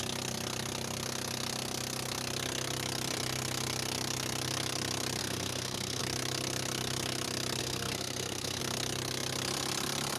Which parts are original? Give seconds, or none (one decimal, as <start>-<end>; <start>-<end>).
0.0-5.2; 6.0-7.6; 8.6-10.2